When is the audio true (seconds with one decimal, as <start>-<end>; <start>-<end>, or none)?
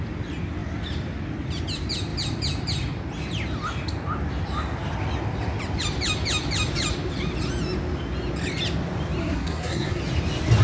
0.0-9.2; 10.0-10.6